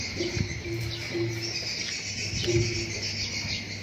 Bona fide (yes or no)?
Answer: yes